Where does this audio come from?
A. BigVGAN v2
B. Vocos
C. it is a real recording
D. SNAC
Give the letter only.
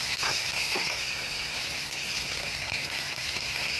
D